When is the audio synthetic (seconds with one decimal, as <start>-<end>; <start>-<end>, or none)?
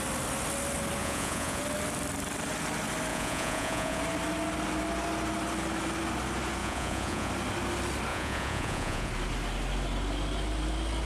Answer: 1.0-1.6; 3.1-4.0; 6.6-7.3; 8.1-9.1